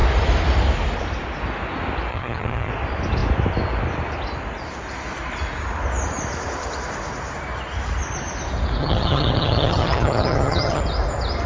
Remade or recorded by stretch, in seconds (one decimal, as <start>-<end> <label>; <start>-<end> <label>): 0.0-2.1 recorded; 2.1-2.7 remade; 2.7-8.8 recorded; 8.8-10.8 remade; 10.8-11.5 recorded